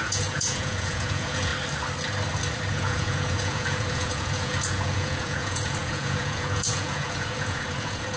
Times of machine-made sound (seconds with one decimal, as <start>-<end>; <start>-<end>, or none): 0.0-1.5; 2.7-8.2